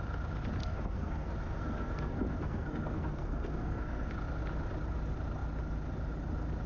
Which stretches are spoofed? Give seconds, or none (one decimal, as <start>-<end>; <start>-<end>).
0.6-4.1